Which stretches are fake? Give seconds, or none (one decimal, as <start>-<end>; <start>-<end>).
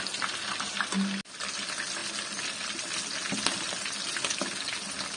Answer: none